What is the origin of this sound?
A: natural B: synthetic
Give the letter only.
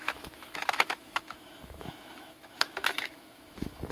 B